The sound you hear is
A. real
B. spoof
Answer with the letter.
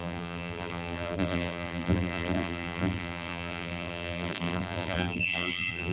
B